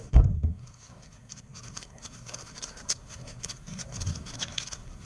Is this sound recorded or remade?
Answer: remade